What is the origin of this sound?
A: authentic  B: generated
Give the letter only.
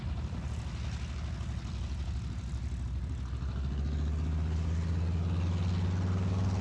A